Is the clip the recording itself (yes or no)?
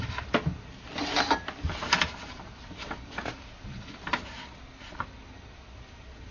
yes